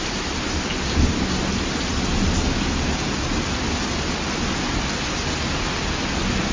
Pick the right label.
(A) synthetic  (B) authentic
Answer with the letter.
B